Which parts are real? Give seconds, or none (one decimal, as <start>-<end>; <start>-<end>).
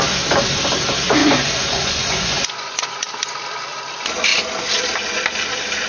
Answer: 0.0-1.2; 3.1-5.9